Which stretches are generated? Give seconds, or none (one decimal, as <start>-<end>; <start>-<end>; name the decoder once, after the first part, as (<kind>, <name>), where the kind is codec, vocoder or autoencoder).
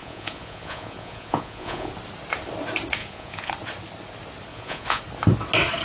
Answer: 0.0-1.9 (vocoder, Vocos); 3.0-3.5; 4.5-5.0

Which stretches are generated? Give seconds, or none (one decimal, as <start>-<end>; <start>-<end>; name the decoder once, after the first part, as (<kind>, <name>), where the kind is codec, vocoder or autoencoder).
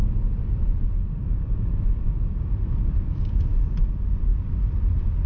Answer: none